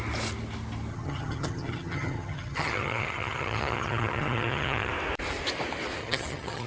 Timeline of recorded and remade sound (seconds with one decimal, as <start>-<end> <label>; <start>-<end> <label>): 0.0-0.9 recorded; 0.9-4.9 remade; 4.9-6.0 recorded; 6.0-6.7 remade